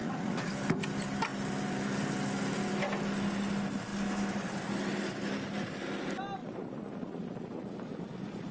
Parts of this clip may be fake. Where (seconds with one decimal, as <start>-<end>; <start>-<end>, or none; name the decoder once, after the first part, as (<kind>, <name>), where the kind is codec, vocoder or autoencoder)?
0.0-0.5 (vocoder, Vocos); 6.4-7.7